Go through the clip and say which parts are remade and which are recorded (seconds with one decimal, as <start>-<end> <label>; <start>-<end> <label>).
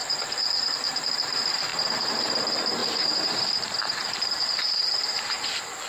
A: 0.0-1.7 recorded; 1.7-2.4 remade; 2.4-2.8 recorded; 2.8-3.5 remade; 3.5-4.0 recorded; 4.0-4.8 remade; 4.8-5.9 recorded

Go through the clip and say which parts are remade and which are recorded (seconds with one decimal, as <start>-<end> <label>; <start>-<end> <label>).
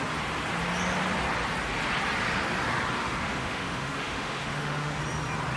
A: 0.0-3.0 recorded; 3.0-5.0 remade; 5.0-5.6 recorded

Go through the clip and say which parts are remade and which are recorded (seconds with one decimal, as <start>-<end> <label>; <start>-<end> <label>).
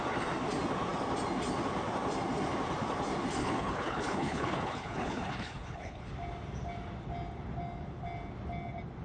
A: 0.0-3.4 recorded; 3.4-6.1 remade; 6.1-9.0 recorded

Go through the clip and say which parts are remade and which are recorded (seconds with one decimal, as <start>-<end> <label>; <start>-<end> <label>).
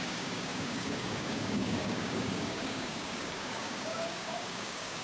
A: 0.0-5.0 remade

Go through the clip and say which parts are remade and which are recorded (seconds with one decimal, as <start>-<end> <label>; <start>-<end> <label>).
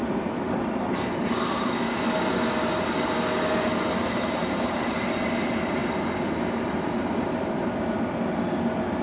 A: 0.0-9.0 recorded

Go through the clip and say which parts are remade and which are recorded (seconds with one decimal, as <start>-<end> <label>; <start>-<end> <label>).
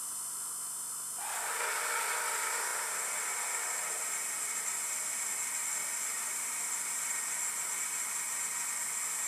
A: 0.0-2.7 recorded; 2.7-5.0 remade; 5.0-6.1 recorded; 6.1-8.5 remade; 8.5-9.3 recorded